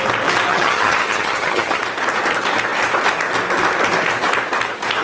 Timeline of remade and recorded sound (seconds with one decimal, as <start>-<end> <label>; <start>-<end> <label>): 0.0-0.5 recorded; 0.5-1.8 remade; 1.8-5.0 recorded